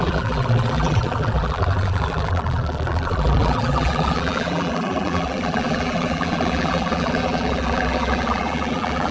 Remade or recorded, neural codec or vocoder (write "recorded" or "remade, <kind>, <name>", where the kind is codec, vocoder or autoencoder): remade, vocoder, BigVGAN v2